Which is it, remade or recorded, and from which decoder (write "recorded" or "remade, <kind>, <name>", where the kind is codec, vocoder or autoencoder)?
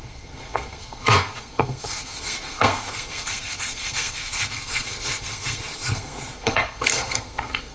remade, codec, SNAC